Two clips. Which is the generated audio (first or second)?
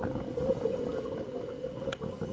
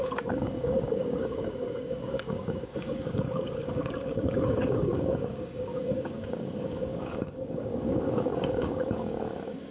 second